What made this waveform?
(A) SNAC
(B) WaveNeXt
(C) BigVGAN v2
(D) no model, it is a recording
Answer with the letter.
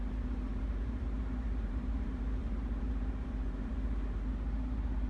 C